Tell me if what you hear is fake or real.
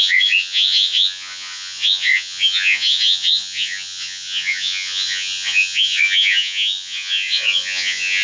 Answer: fake